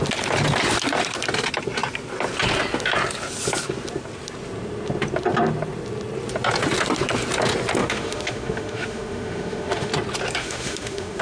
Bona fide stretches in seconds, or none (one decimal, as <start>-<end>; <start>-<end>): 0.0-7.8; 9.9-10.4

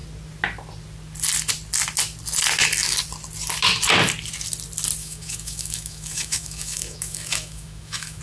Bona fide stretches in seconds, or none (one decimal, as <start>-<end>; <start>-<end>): 0.0-5.0

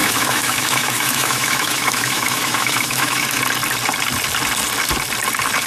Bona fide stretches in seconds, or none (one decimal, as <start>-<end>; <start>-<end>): 3.4-5.7

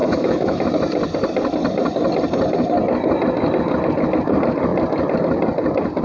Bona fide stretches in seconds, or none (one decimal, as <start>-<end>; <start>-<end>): 0.7-6.0

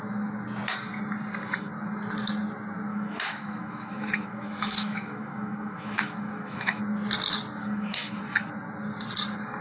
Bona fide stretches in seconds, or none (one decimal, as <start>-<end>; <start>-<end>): 0.0-2.9; 6.8-7.6; 8.2-9.6

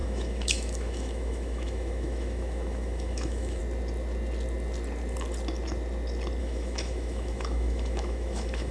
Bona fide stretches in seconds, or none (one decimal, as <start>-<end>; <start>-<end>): 3.6-6.4

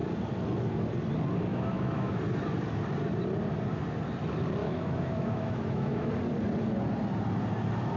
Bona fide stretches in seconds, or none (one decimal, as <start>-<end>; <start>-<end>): 0.0-1.5; 2.2-4.6; 6.1-8.0

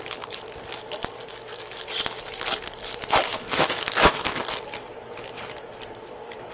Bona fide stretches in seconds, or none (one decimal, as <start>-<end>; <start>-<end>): 0.0-1.3; 1.8-3.3; 4.4-6.5